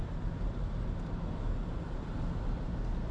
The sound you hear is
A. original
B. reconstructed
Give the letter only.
A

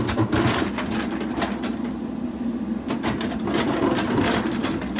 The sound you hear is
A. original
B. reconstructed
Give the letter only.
A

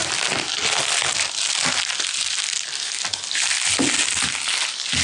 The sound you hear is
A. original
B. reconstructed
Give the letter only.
A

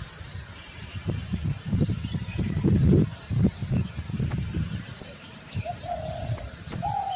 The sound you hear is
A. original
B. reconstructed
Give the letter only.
B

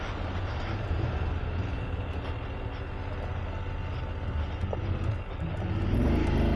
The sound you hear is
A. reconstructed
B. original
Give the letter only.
B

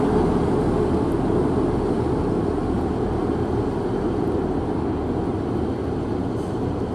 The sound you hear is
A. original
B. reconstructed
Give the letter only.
A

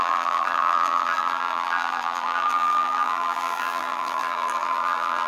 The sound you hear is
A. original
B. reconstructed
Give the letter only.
B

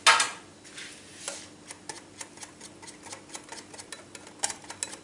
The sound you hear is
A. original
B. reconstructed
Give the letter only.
A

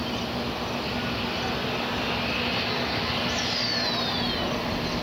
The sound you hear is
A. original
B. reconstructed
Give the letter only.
A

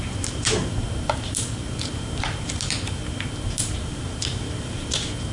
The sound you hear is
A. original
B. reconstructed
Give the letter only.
B